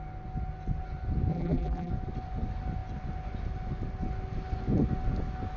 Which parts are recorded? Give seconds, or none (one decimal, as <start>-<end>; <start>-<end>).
0.0-1.3; 1.9-5.6